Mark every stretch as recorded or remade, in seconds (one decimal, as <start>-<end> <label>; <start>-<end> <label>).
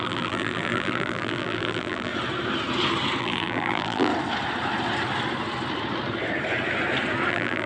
0.0-2.1 remade; 2.1-3.2 recorded; 3.2-4.1 remade; 4.1-7.3 recorded; 7.3-7.7 remade